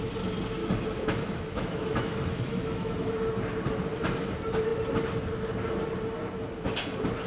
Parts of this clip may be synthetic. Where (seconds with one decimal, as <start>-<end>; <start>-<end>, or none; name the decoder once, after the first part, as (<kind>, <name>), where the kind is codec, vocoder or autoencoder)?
0.6-3.1 (autoencoder, DAC-VAE)